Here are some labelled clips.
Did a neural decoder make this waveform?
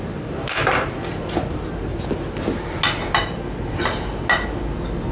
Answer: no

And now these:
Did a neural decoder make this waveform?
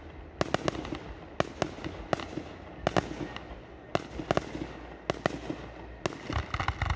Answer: no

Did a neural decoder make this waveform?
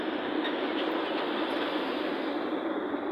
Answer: yes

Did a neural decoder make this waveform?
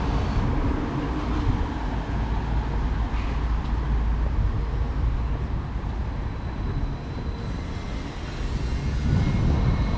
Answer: no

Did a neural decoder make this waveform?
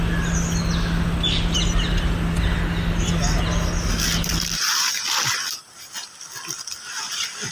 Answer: no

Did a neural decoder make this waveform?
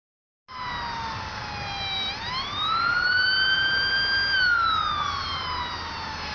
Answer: no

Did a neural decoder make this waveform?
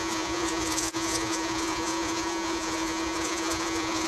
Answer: yes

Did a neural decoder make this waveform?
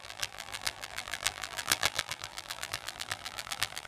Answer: yes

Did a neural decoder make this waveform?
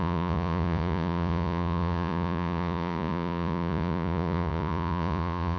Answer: yes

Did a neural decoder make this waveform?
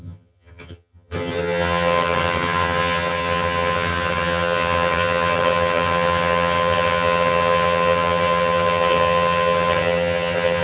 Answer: yes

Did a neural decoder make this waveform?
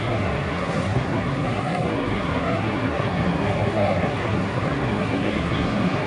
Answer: yes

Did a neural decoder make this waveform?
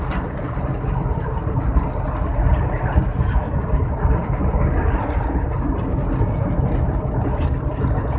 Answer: no